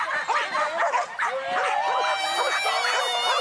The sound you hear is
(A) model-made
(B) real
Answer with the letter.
B